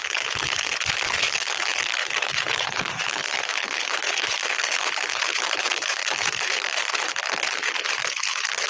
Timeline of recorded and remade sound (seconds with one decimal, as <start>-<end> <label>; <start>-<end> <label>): 0.0-8.7 remade